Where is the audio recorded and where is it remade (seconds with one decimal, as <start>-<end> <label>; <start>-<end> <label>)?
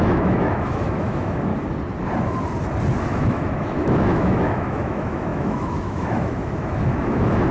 0.0-1.5 remade; 1.5-3.0 recorded; 3.0-7.5 remade